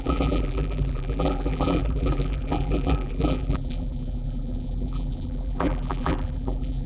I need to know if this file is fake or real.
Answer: fake